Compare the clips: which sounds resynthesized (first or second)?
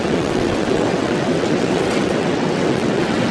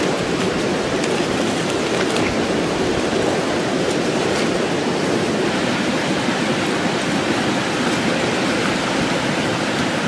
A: first